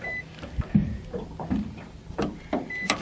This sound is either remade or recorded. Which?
recorded